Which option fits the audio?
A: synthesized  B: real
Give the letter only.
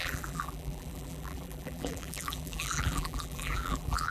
A